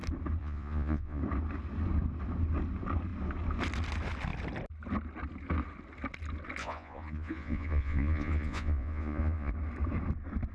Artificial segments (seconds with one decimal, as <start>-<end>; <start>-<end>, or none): 0.4-1.2; 6.6-9.5